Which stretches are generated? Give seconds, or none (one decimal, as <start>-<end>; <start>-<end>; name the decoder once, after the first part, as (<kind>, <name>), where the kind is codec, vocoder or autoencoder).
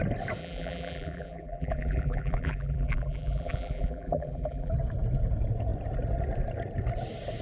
0.4-4.7 (vocoder, BigVGAN v2)